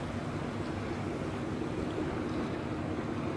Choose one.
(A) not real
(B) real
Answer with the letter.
B